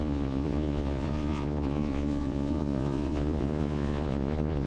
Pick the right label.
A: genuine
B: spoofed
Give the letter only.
B